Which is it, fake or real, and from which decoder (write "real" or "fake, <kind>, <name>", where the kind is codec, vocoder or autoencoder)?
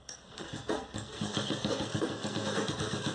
fake, codec, SNAC